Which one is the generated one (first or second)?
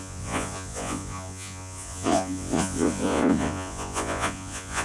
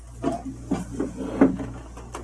first